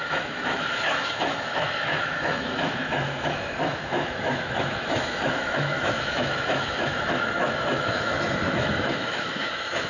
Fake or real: fake